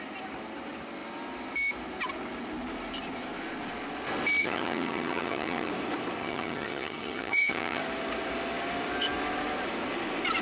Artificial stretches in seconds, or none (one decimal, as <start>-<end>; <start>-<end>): 4.4-5.7; 6.2-7.8